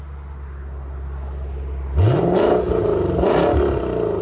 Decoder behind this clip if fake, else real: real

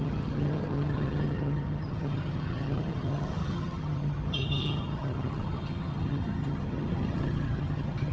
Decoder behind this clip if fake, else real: fake, vocoder, HiFi-GAN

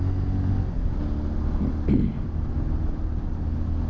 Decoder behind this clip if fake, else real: real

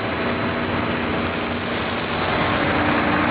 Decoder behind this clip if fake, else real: real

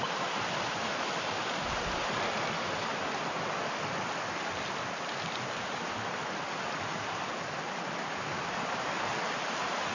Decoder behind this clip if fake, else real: real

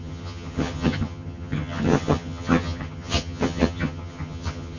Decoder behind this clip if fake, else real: fake, vocoder, HiFi-GAN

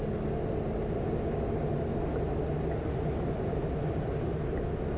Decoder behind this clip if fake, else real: real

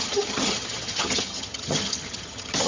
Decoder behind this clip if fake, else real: fake, vocoder, HiFi-GAN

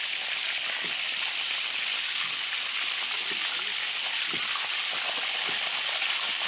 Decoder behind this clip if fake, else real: real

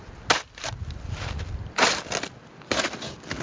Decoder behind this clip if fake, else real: real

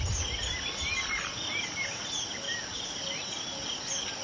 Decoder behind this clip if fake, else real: real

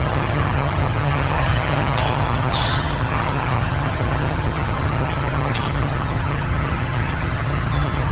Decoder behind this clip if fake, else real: fake, vocoder, HiFi-GAN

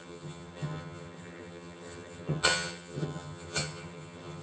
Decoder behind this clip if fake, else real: fake, vocoder, HiFi-GAN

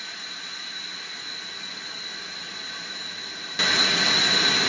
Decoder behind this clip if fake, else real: real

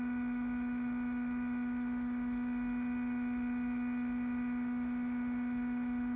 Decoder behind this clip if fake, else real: real